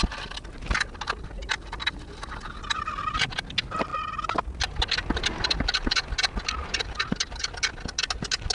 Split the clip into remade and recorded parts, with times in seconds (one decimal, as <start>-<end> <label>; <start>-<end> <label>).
0.0-8.5 recorded